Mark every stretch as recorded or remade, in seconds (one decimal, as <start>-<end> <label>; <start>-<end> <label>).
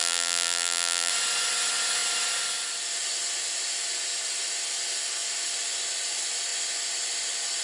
0.0-1.1 remade; 1.1-7.6 recorded